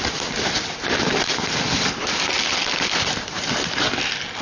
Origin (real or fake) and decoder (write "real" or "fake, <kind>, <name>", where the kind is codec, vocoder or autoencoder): real